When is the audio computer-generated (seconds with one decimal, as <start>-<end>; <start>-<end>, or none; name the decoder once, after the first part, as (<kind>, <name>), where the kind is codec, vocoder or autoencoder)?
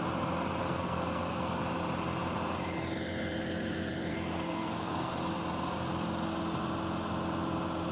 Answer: 0.6-1.6 (codec, SNAC); 4.1-5.1